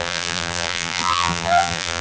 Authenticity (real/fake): fake